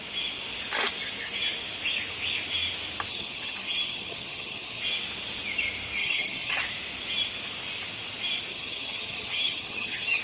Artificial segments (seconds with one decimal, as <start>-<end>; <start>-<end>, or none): 3.1-4.8; 6.0-6.6; 8.5-10.2